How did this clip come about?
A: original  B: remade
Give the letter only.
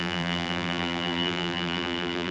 B